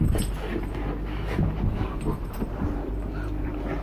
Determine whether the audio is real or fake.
fake